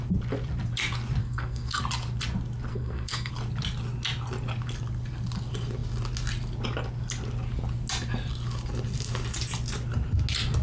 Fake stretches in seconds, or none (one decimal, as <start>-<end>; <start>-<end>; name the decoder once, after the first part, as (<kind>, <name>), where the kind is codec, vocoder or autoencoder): 1.2-1.8 (codec, SNAC); 2.7-3.3